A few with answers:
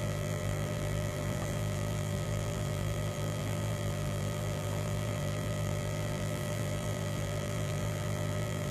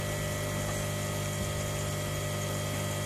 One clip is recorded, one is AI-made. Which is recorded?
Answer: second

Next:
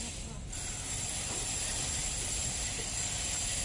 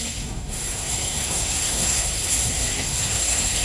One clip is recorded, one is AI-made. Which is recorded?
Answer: first